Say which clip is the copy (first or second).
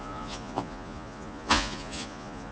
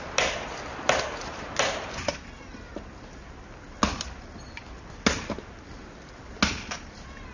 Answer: first